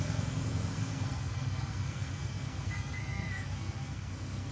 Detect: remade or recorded remade